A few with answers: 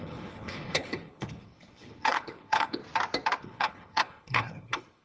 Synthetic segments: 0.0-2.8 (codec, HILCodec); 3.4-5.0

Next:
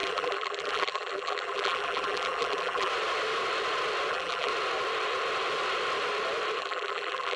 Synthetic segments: 0.0-2.9 (vocoder, BigVGAN v2); 4.1-4.5; 6.6-7.4

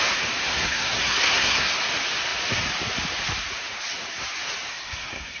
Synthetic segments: 0.5-1.8 (codec, SNAC); 4.7-5.4

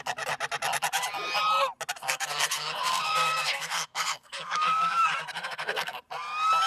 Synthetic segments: 2.0-6.0 (codec, SNAC)

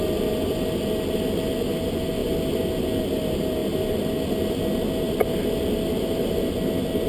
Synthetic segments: none

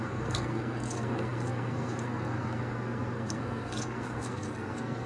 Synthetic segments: 0.0-5.1 (codec, SNAC)